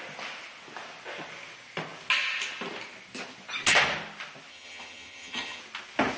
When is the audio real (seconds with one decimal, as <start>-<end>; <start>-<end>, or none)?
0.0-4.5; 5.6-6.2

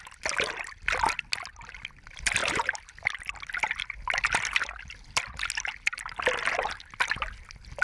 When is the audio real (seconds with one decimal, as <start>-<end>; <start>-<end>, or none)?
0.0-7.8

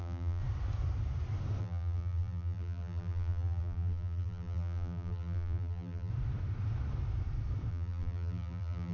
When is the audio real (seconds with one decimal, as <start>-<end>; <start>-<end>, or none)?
0.4-1.6; 6.1-7.7